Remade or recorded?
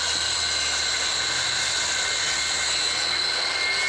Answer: recorded